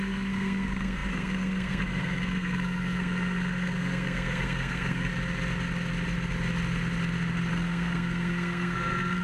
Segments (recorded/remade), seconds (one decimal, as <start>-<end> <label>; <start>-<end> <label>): 0.0-5.1 remade; 5.1-7.5 recorded; 7.5-9.2 remade